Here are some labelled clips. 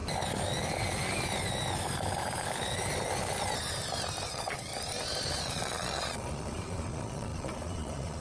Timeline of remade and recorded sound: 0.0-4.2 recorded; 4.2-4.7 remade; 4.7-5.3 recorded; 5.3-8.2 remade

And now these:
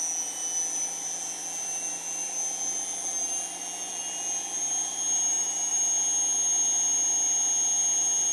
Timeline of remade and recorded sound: 0.0-8.3 recorded

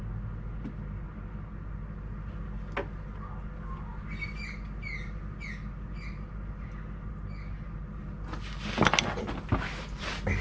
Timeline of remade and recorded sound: 0.0-10.4 recorded

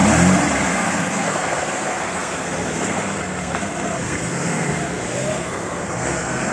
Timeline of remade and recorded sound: 0.0-0.7 recorded; 0.7-6.5 remade

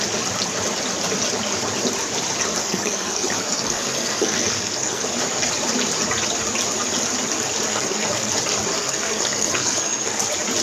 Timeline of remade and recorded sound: 0.0-2.6 recorded; 2.6-5.2 remade; 5.2-7.7 recorded; 7.7-8.3 remade; 8.3-8.8 recorded; 8.8-10.2 remade; 10.2-10.6 recorded